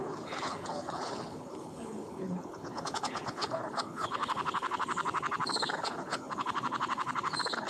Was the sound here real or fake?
fake